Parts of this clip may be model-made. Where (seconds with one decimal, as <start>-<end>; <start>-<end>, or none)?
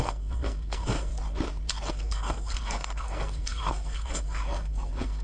0.0-1.1; 1.9-5.2